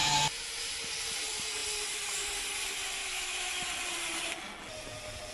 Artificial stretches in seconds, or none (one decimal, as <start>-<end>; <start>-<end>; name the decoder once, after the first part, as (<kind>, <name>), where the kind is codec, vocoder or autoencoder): 3.0-3.7 (autoencoder, DAC-VAE)